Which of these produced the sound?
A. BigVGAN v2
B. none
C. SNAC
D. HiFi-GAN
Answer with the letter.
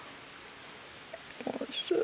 B